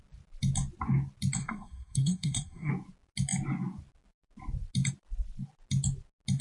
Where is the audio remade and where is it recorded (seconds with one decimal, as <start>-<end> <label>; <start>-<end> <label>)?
0.0-1.4 recorded; 1.4-2.7 remade; 2.7-6.4 recorded